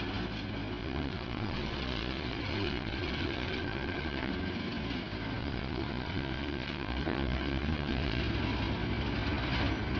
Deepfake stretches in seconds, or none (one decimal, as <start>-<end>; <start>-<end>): 0.8-4.3; 5.4-8.2